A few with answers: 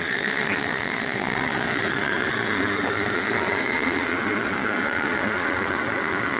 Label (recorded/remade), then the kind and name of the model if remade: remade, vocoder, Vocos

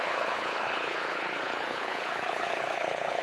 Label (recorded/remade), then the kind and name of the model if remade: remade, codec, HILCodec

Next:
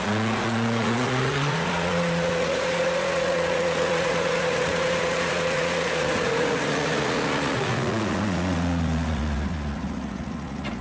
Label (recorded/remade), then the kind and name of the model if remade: remade, vocoder, Vocos